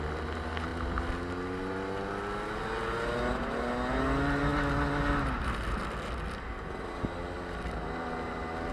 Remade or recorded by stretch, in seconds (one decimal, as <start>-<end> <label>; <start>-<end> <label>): 0.0-8.7 recorded